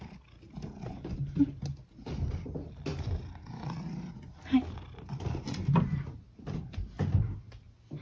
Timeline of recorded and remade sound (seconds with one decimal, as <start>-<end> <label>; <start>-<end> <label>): 0.0-8.0 recorded